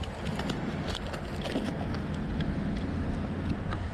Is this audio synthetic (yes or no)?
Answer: no